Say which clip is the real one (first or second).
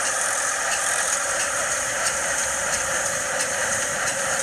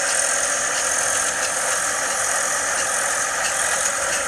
second